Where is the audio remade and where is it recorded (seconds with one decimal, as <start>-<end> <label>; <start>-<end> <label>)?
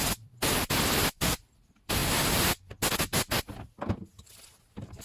0.0-5.0 recorded